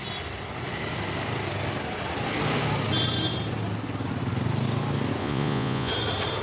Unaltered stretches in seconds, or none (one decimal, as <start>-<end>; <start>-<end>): 0.0-5.2; 5.9-6.4